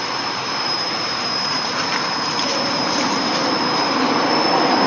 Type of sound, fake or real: fake